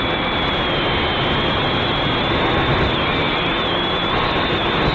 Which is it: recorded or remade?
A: recorded